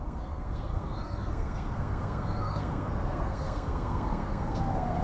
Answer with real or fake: fake